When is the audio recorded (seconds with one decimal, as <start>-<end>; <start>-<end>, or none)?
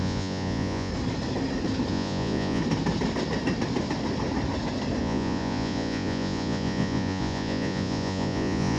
0.9-1.9; 2.6-5.0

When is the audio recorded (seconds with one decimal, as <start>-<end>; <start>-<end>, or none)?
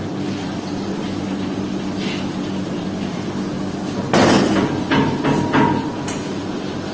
4.1-6.9